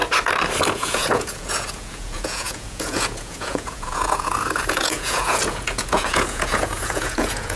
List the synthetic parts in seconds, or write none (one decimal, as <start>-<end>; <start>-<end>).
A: 0.7-7.6